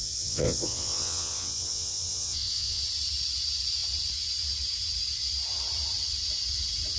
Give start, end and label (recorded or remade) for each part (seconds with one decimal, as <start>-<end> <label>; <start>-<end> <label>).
0.0-2.8 remade; 2.8-7.0 recorded